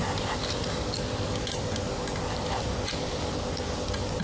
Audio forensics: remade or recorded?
recorded